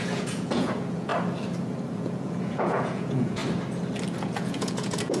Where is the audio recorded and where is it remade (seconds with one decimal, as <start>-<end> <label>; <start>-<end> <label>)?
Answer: 0.0-1.1 remade; 1.1-1.9 recorded; 1.9-3.4 remade; 3.4-4.2 recorded; 4.2-5.2 remade